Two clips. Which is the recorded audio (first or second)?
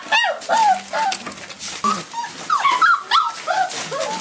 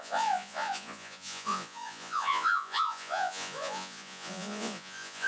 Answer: first